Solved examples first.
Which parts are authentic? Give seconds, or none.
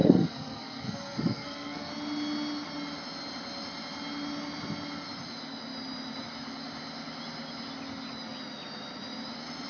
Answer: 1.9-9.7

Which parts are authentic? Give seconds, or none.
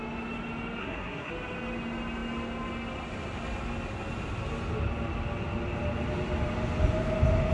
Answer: 0.0-0.8; 1.3-7.5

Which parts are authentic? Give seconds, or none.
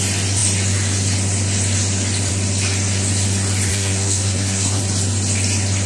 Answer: 0.0-3.7; 4.8-5.9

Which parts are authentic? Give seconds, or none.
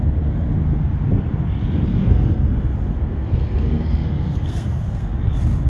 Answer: 0.0-1.9; 5.3-5.7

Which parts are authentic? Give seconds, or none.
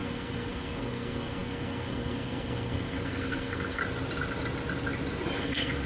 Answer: 3.8-5.4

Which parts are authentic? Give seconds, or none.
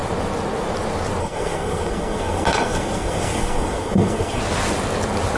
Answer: 0.0-1.2; 4.4-5.4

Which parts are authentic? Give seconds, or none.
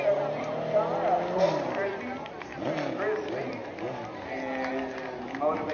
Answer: 0.0-5.7